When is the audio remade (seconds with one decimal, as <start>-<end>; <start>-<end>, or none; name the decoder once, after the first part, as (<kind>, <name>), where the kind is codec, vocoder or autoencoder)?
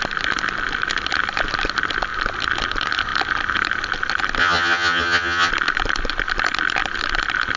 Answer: 4.4-5.5 (vocoder, HiFi-GAN)